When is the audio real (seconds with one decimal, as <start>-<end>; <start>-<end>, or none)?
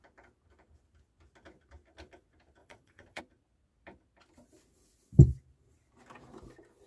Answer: 0.0-2.6; 3.2-6.9